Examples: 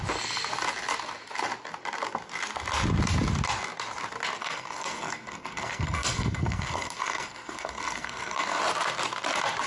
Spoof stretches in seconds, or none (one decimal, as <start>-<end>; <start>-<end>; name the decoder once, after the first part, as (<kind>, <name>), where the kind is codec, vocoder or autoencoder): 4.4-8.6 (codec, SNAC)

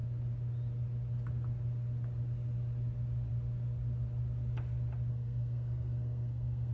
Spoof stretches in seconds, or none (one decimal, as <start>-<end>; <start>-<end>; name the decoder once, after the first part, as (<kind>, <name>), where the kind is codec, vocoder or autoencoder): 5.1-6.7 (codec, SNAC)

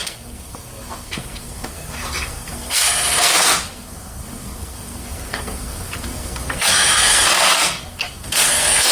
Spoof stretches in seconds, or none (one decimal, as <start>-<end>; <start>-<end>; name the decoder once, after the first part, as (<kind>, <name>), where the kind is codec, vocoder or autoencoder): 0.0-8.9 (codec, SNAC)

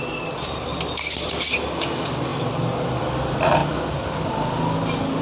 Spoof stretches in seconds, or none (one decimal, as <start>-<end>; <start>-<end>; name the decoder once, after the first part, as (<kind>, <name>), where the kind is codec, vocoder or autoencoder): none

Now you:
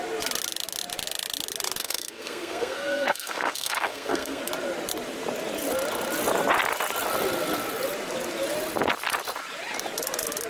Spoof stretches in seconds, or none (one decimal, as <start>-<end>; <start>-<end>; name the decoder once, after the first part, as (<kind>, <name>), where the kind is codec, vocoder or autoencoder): 1.8-4.4 (codec, SNAC)

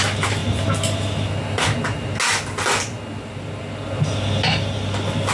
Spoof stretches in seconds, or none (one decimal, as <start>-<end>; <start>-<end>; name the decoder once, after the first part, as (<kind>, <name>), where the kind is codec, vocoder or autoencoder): none